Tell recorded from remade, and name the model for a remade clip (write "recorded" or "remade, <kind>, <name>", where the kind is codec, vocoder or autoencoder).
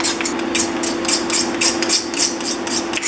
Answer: recorded